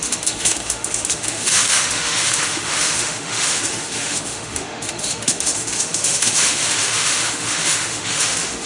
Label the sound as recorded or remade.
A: remade